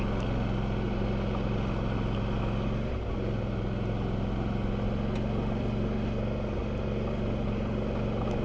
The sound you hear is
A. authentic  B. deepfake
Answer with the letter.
A